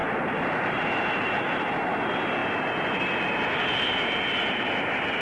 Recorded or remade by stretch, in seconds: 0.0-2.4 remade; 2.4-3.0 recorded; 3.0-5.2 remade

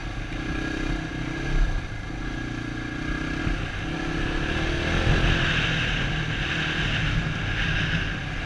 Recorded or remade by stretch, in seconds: 0.0-8.5 recorded

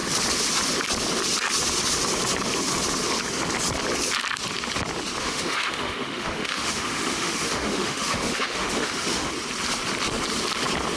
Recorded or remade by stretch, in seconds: 0.0-5.2 recorded; 5.2-9.3 remade; 9.3-11.0 recorded